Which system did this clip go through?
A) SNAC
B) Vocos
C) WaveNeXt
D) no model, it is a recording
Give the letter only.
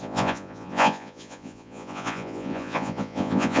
B